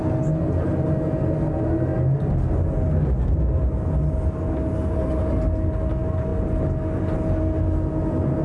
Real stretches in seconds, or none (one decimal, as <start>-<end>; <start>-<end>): 0.0-8.4